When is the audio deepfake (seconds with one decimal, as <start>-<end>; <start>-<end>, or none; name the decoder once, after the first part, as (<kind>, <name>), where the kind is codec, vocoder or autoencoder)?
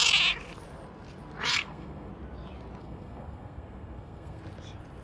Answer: 1.5-2.1 (codec, SNAC); 2.8-4.4